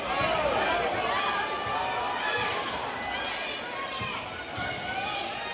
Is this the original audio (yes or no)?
yes